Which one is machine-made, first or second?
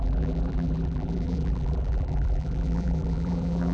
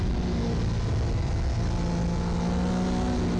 first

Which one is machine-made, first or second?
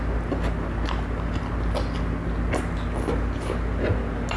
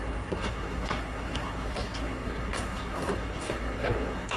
second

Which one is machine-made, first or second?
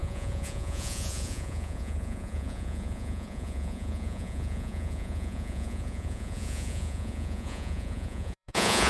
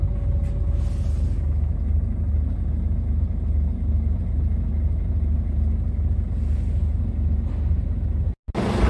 first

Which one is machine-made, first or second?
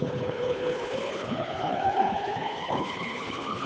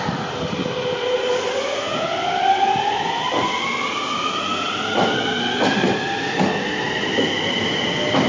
first